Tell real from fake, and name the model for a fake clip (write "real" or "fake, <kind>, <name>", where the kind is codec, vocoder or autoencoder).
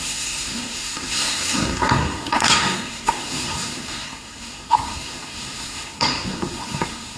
fake, codec, SNAC